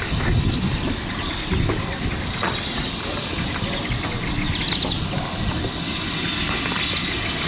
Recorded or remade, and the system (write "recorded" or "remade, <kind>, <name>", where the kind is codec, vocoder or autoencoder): recorded